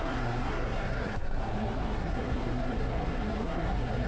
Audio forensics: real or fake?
fake